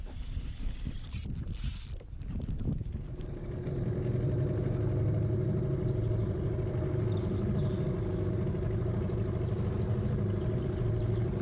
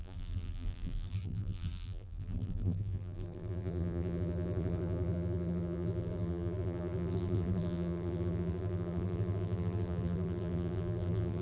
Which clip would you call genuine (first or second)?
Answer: first